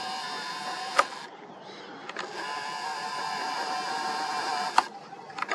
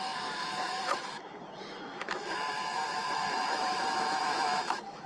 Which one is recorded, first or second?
first